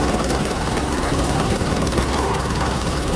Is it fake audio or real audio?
fake